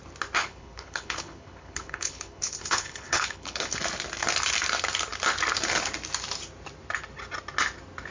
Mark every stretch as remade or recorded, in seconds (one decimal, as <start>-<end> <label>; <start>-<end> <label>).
0.0-0.4 recorded; 0.4-3.8 remade; 3.8-8.1 recorded